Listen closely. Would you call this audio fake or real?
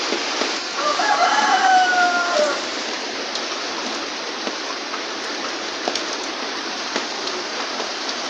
fake